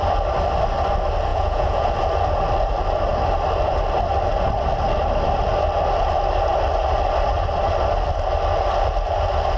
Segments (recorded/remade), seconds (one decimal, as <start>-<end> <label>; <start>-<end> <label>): 0.0-1.3 recorded; 1.3-1.9 remade; 1.9-9.6 recorded